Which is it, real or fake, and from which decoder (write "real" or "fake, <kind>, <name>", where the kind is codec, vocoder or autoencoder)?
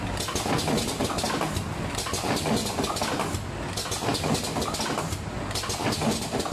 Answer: real